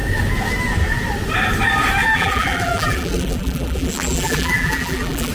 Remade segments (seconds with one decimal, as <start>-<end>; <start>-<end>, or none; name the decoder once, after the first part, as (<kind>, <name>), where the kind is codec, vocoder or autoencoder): 2.0-5.3 (vocoder, BigVGAN v2)